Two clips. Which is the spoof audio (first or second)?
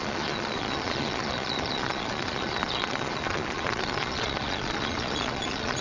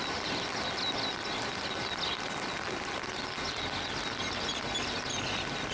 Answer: first